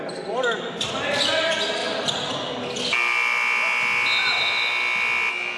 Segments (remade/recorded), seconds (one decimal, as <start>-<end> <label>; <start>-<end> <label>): 0.0-5.6 recorded